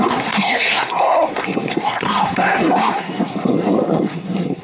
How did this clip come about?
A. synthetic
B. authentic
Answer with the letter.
A